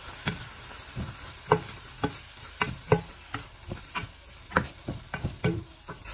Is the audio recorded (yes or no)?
yes